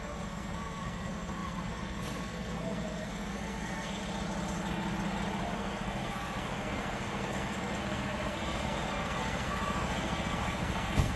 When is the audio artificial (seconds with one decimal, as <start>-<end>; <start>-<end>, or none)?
0.0-4.0; 5.5-11.2